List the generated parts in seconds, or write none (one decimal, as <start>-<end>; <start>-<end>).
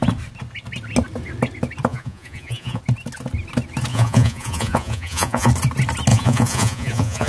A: 1.9-2.8; 3.9-5.5; 6.1-7.3